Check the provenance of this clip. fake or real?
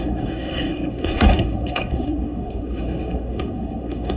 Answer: fake